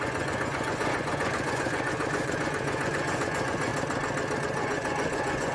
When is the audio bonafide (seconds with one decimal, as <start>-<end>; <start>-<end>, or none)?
3.7-4.4